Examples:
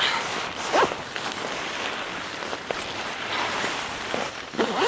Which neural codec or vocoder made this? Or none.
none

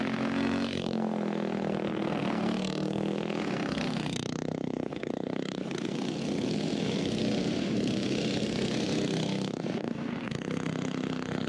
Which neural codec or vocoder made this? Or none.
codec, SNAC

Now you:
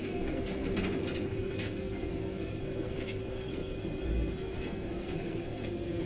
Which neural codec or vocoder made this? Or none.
codec, SNAC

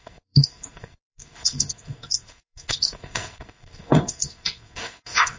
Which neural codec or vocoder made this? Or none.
codec, SNAC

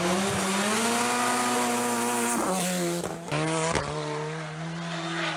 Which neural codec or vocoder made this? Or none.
none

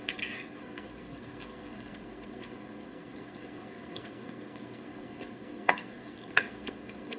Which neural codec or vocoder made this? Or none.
codec, SNAC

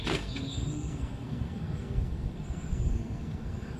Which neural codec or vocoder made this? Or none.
codec, SNAC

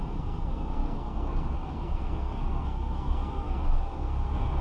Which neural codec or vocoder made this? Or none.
codec, SNAC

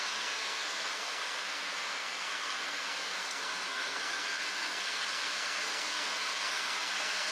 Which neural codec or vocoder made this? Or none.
codec, SNAC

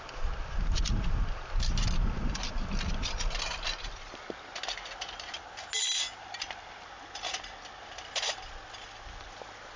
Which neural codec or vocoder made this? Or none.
none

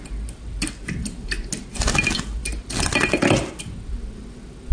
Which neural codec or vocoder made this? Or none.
none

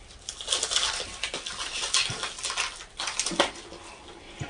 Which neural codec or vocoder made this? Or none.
none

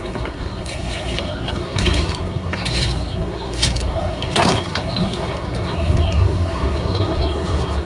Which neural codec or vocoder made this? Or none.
codec, SNAC